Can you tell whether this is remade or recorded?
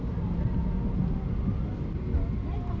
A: recorded